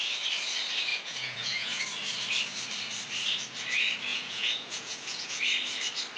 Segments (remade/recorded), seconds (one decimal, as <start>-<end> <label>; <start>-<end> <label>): 0.0-0.9 recorded; 0.9-1.8 remade; 1.8-4.1 recorded; 4.1-5.4 remade; 5.4-6.2 recorded